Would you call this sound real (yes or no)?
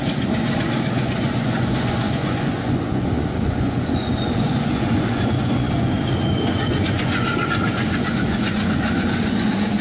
no